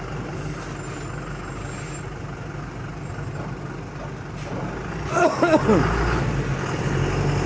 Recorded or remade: recorded